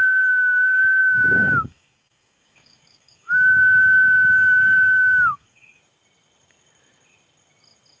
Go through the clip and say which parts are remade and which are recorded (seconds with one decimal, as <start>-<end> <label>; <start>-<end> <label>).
0.0-1.0 recorded; 1.0-5.8 remade; 5.8-8.0 recorded